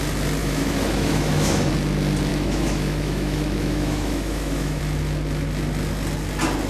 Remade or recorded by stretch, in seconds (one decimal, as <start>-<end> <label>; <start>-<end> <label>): 0.0-0.4 recorded; 0.4-1.7 remade; 1.7-2.3 recorded; 2.3-4.8 remade; 4.8-6.7 recorded